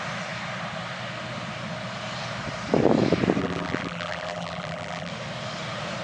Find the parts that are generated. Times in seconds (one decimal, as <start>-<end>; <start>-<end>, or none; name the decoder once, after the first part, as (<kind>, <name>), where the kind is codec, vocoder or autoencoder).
3.4-5.1 (vocoder, BigVGAN v2)